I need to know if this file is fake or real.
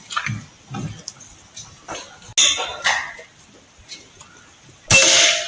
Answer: real